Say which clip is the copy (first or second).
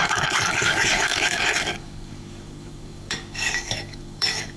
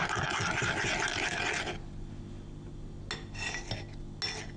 first